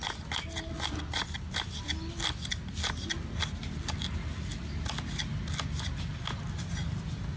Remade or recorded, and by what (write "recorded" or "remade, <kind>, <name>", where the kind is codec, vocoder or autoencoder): recorded